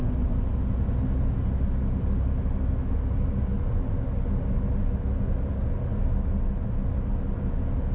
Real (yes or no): yes